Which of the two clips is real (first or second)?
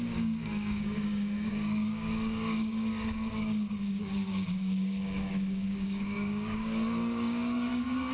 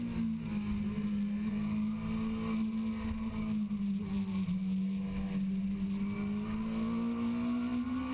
second